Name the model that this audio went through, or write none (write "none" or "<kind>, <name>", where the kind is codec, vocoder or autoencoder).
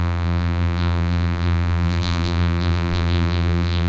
vocoder, BigVGAN v2